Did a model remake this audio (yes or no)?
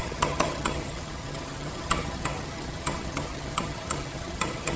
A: yes